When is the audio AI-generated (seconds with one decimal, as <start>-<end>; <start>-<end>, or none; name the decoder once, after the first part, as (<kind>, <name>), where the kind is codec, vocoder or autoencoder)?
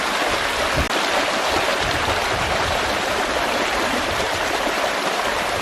1.7-4.8 (vocoder, BigVGAN v2)